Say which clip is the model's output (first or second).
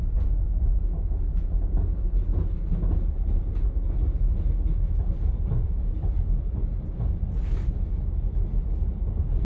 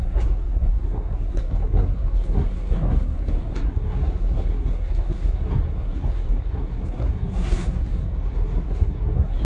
second